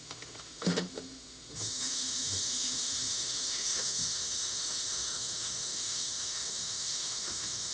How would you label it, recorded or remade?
remade